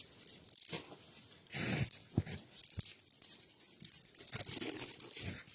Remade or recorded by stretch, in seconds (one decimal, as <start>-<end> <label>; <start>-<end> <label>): 0.0-2.0 recorded; 2.0-3.4 remade; 3.4-5.5 recorded